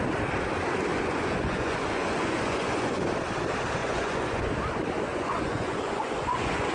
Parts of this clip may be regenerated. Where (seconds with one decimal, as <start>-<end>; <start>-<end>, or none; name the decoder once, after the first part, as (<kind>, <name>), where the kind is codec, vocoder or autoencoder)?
0.9-3.1 (vocoder, Vocos); 3.8-4.5; 5.1-6.7